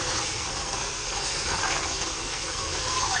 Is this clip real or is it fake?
fake